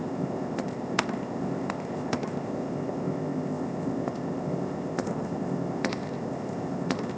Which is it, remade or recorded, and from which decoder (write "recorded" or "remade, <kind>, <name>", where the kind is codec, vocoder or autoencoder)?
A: remade, codec, ZipCodec